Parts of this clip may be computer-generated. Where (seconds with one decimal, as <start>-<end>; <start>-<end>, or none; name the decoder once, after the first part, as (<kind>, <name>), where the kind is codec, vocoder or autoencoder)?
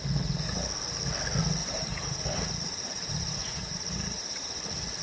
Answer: 1.6-4.6 (vocoder, BigVGAN v2)